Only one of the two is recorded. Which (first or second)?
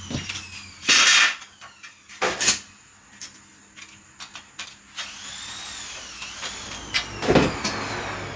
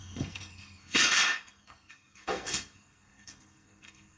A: first